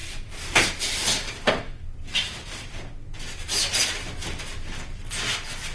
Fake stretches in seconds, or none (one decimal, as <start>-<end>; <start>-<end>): 0.0-0.5